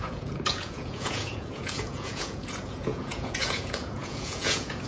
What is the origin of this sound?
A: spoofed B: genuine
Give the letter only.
A